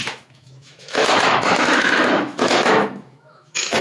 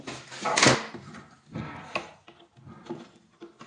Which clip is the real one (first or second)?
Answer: second